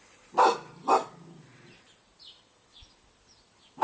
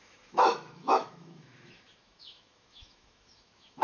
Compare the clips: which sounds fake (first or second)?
second